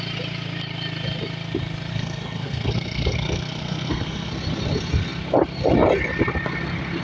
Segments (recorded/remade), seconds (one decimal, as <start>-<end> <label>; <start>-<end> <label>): 0.0-1.9 recorded; 1.9-4.3 remade; 4.3-7.0 recorded